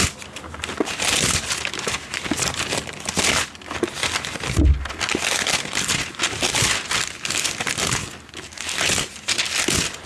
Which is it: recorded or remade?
recorded